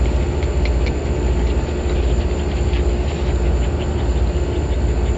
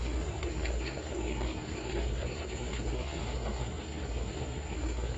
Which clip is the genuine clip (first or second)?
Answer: first